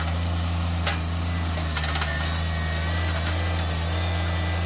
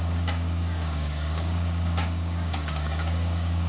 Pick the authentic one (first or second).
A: first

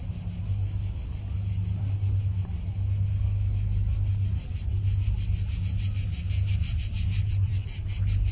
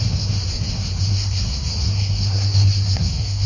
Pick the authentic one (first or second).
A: first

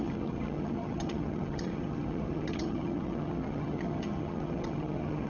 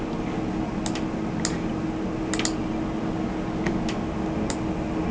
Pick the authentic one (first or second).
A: second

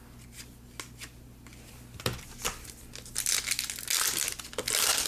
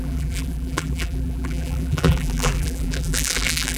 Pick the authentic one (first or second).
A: first